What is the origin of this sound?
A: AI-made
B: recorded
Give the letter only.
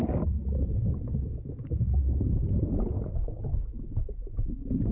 B